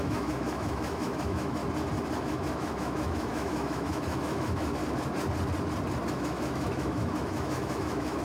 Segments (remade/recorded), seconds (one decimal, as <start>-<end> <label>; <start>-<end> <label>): 0.0-1.6 remade; 1.6-2.2 recorded; 2.2-4.8 remade; 4.8-6.1 recorded; 6.1-8.2 remade